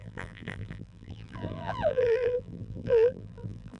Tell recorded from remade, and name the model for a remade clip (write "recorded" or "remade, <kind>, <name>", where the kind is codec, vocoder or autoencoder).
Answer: remade, vocoder, BigVGAN v2